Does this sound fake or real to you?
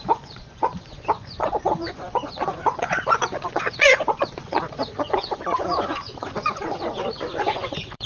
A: fake